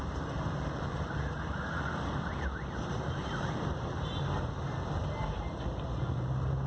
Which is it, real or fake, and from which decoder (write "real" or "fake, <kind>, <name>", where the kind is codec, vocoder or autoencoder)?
fake, vocoder, BigVGAN v2